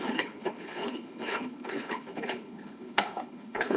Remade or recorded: remade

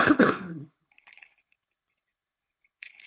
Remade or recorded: remade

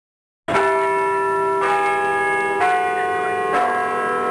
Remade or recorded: recorded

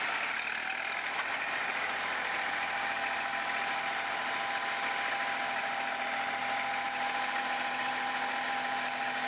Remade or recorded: recorded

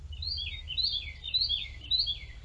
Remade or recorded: recorded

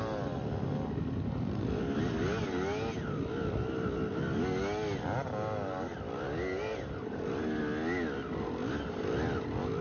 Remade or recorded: recorded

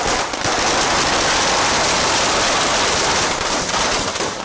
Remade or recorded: recorded